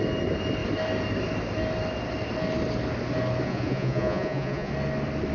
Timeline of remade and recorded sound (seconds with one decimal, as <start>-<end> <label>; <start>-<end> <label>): 0.0-3.5 recorded; 3.5-4.7 remade; 4.7-5.3 recorded